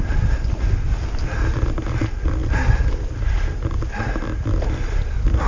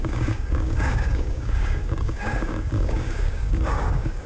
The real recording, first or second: first